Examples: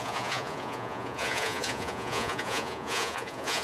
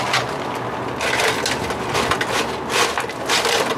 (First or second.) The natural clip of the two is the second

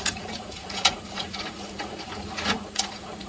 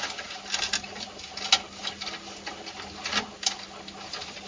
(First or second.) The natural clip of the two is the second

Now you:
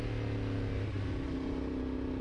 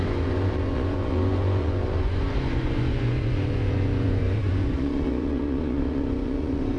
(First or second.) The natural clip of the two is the first